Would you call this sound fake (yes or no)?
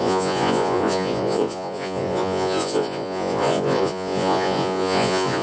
yes